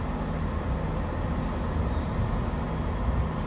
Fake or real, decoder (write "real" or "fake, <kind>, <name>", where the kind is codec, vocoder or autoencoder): real